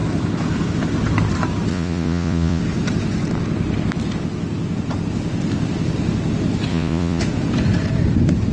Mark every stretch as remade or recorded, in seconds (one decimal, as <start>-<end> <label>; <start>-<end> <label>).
0.0-1.7 recorded; 1.7-2.6 remade; 2.6-6.7 recorded; 6.7-7.2 remade; 7.2-8.5 recorded